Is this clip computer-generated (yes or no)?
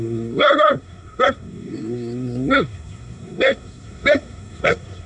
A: yes